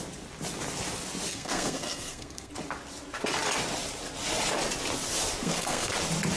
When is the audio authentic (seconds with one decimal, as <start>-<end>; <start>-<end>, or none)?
0.0-1.3; 2.5-5.4; 5.9-6.4